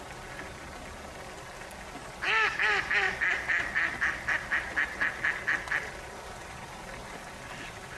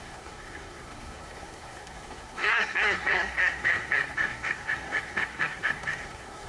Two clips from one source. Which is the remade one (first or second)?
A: second